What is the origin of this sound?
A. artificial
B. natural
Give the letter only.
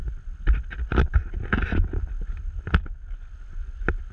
B